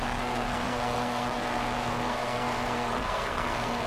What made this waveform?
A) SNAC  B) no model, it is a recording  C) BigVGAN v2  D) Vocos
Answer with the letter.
A